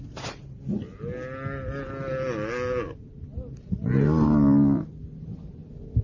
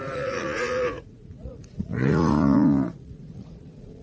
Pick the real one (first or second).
first